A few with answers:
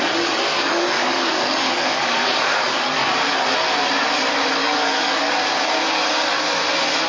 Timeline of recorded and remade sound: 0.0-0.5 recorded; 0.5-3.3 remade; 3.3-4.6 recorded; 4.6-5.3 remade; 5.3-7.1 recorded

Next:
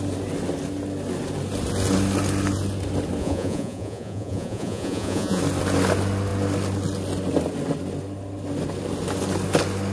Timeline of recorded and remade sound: 0.0-3.2 recorded; 3.2-5.4 remade; 5.4-9.9 recorded

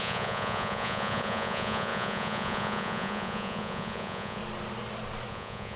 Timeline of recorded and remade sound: 0.0-4.4 remade; 4.4-5.3 recorded; 5.3-5.8 remade

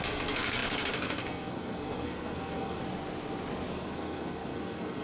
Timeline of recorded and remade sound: 0.0-2.8 remade; 2.8-3.7 recorded; 3.7-5.0 remade

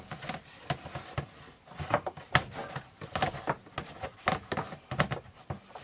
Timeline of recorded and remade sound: 0.0-5.8 recorded

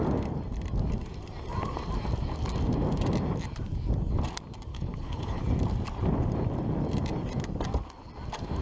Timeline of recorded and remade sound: 0.0-4.7 recorded; 4.7-5.4 remade; 5.4-8.6 recorded

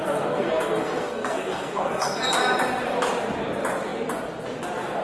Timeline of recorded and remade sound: 0.0-2.2 remade; 2.2-5.0 recorded